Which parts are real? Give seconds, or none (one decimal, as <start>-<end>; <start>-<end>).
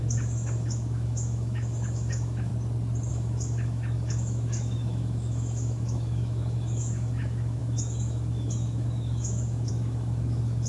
2.5-3.1